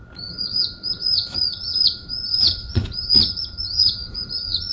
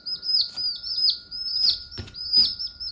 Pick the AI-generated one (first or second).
first